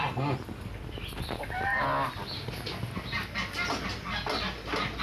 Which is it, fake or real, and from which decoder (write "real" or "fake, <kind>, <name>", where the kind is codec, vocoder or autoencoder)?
real